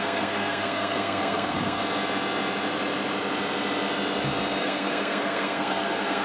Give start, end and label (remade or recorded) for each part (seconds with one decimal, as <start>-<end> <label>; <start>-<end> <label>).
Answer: 0.0-1.8 remade; 1.8-4.6 recorded; 4.6-6.2 remade